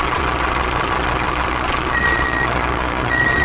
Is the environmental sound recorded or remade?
remade